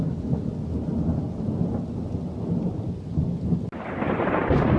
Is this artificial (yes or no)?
no